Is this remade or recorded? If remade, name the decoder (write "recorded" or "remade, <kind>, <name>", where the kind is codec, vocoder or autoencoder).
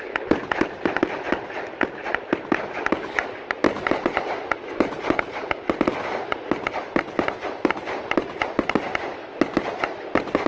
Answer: recorded